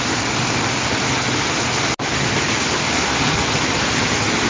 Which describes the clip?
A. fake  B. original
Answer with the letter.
B